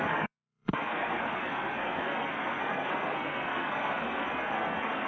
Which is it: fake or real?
fake